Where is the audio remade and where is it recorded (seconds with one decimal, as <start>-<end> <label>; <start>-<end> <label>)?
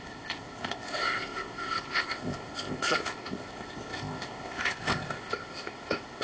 0.0-6.2 remade